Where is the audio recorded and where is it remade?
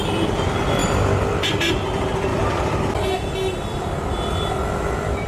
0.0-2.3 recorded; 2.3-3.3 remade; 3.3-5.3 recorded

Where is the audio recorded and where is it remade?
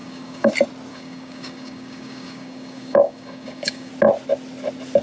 0.0-0.5 remade; 0.5-0.9 recorded; 0.9-3.9 remade; 3.9-5.0 recorded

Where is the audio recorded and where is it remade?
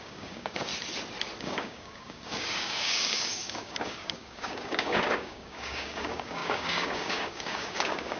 0.0-0.7 remade; 0.7-1.4 recorded; 1.4-8.2 remade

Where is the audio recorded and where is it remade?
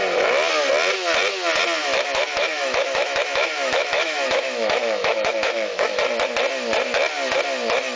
0.0-1.8 recorded; 1.8-6.0 remade; 6.0-8.0 recorded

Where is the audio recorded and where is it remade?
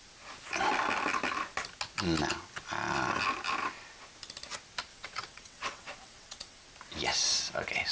0.0-4.9 recorded; 4.9-6.6 remade; 6.6-7.9 recorded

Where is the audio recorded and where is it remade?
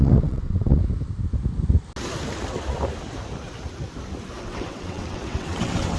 0.0-0.8 remade; 0.8-4.4 recorded; 4.4-6.0 remade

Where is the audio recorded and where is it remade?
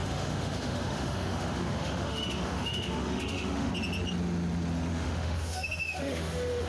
0.0-3.7 remade; 3.7-4.9 recorded; 4.9-6.7 remade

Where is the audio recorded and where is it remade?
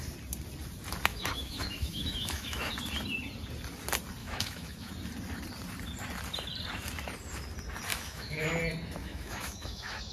0.0-1.1 recorded; 1.1-2.7 remade; 2.7-4.2 recorded; 4.2-4.9 remade; 4.9-7.9 recorded; 7.9-8.6 remade; 8.6-9.0 recorded; 9.0-10.1 remade